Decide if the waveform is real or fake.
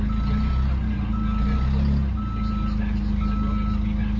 real